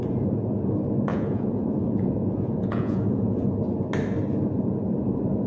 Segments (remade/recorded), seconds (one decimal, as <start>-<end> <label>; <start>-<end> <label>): 0.0-1.1 recorded; 1.1-3.6 remade; 3.6-5.5 recorded